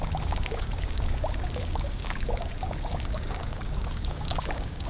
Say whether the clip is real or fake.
fake